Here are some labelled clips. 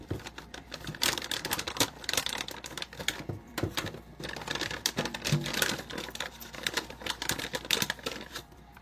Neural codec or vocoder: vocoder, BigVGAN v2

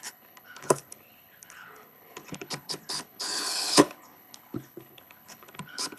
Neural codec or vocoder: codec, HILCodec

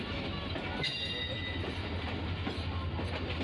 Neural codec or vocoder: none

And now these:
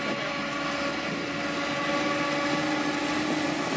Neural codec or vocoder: none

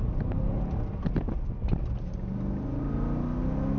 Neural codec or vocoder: none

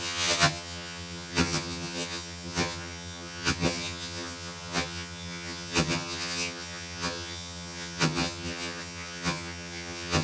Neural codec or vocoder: vocoder, HiFi-GAN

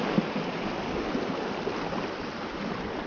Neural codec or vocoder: none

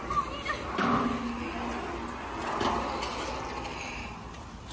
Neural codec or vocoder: none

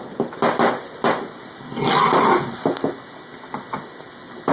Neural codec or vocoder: none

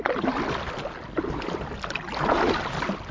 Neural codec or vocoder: none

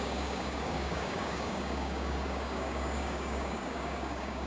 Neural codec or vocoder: codec, DAC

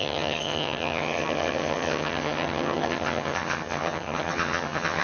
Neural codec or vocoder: vocoder, HiFi-GAN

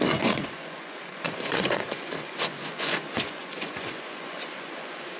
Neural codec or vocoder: vocoder, Vocos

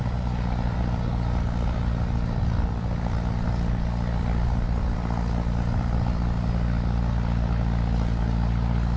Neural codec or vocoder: none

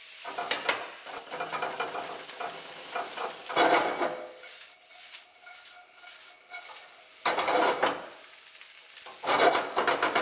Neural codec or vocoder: none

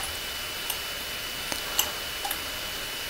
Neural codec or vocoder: none